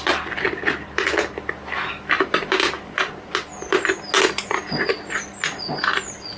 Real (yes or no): yes